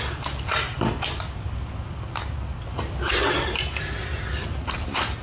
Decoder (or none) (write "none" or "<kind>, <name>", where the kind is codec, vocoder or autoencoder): none